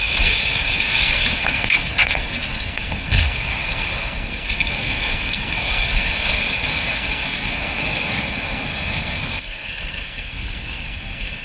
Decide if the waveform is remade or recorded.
remade